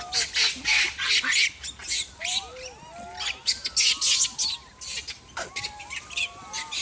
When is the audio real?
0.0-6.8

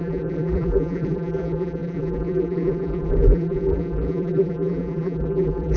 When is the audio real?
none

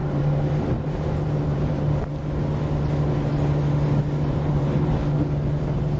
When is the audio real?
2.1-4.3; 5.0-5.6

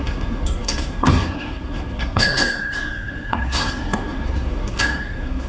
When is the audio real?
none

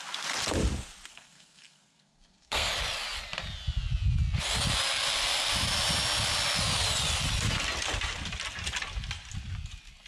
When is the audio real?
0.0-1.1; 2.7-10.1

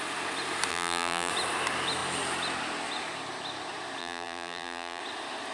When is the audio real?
0.0-0.7; 1.3-4.0; 5.0-5.5